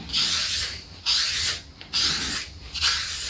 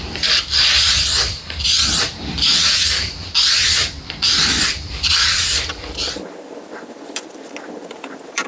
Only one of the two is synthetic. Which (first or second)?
second